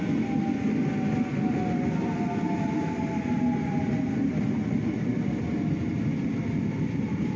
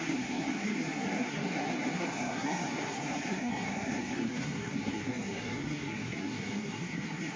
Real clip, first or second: first